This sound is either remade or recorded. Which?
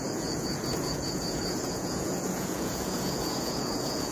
remade